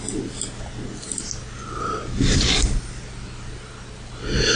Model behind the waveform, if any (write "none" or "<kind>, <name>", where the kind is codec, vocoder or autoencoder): none